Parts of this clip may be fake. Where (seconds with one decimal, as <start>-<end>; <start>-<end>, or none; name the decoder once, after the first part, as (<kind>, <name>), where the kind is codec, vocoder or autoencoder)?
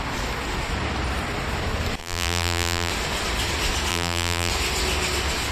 2.0-2.9 (vocoder, BigVGAN v2); 3.9-4.5